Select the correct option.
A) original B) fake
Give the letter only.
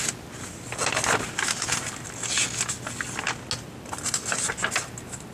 A